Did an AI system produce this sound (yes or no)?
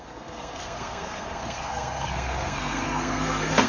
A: yes